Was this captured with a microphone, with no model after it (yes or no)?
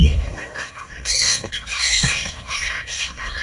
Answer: no